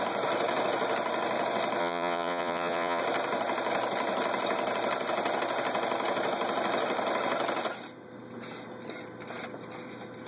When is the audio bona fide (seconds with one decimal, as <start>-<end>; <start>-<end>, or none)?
0.0-1.8; 3.0-10.3